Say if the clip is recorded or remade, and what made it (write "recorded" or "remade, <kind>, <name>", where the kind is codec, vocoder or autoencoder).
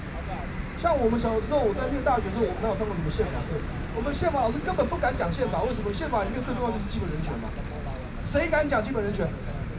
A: recorded